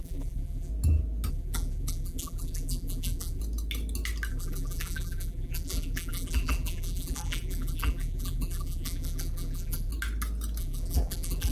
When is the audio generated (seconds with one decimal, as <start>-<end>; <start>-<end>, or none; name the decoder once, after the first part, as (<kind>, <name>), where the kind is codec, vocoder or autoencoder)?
0.0-0.7 (vocoder, BigVGAN v2); 1.3-3.4; 4.3-9.9; 10.6-11.5